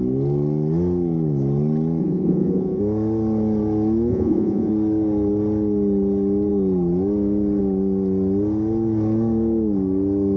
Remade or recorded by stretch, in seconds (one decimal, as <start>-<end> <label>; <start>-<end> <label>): 0.0-2.0 recorded; 2.0-2.8 remade; 2.8-4.1 recorded; 4.1-4.7 remade; 4.7-10.4 recorded